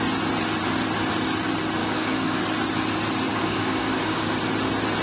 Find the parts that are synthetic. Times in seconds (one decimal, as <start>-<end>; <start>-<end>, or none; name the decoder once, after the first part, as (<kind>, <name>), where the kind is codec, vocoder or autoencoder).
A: 1.8-2.4 (codec, DAC); 3.3-4.3